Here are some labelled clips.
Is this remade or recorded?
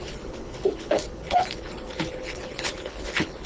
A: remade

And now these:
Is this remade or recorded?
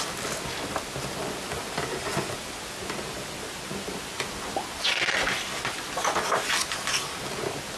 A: recorded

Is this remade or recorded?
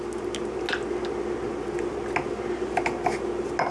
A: recorded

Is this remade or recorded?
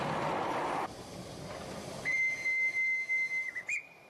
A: recorded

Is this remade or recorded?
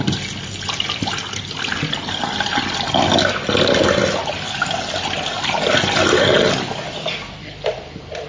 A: recorded